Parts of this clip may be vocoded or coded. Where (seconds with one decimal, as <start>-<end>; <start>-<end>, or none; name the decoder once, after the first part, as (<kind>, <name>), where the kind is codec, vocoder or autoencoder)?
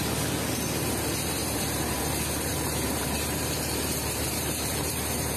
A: 1.4-2.0 (vocoder, BigVGAN v2); 2.5-5.4